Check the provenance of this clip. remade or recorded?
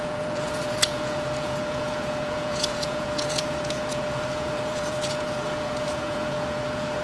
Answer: remade